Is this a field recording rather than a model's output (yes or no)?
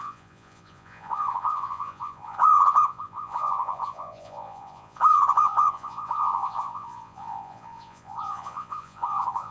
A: no